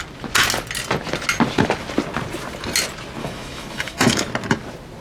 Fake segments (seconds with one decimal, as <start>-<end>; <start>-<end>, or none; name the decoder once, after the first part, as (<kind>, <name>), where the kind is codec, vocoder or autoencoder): 3.2-4.1 (autoencoder, DAC-VAE)